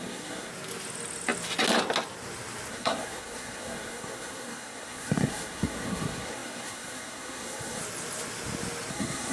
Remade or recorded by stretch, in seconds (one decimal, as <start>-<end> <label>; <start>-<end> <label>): 0.0-0.5 remade; 0.5-2.7 recorded; 2.7-7.8 remade; 7.8-8.9 recorded; 8.9-9.3 remade